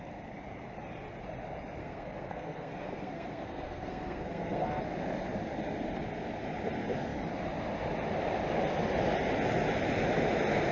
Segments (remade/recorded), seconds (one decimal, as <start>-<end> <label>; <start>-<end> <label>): 0.0-1.8 recorded; 1.8-4.8 remade; 4.8-10.7 recorded